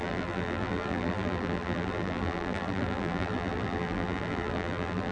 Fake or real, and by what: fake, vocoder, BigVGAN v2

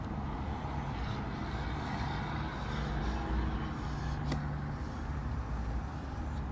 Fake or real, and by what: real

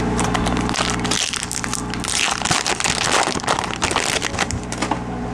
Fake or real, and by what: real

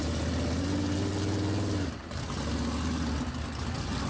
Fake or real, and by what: real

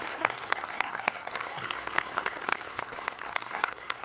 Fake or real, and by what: fake, codec, SNAC